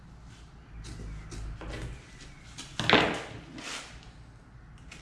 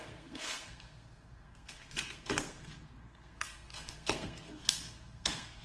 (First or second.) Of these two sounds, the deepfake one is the second